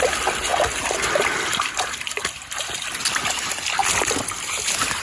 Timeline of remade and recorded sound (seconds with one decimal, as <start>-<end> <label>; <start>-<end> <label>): 0.0-5.0 recorded

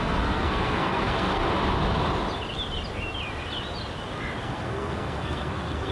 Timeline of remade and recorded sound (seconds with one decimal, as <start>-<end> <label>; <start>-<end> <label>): 0.0-1.4 remade; 1.4-4.4 recorded; 4.4-5.9 remade

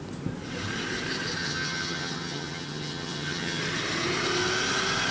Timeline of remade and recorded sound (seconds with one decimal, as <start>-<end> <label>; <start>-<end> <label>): 0.0-1.4 recorded; 1.4-3.6 remade; 3.6-5.1 recorded

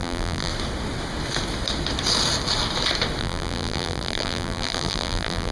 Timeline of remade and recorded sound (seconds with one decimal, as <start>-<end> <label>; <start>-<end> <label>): 0.0-0.5 remade; 0.5-3.2 recorded; 3.2-5.5 remade

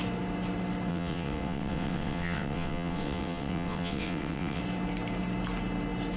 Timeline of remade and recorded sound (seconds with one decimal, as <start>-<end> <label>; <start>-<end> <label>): 0.0-0.9 recorded; 0.9-4.6 remade; 4.6-6.2 recorded